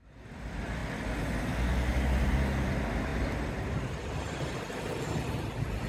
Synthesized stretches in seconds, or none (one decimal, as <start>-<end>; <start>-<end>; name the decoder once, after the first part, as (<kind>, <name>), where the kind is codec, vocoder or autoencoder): none